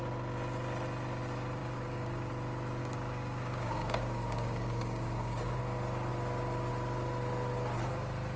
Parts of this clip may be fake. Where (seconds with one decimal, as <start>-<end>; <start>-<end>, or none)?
1.6-2.3; 2.8-5.6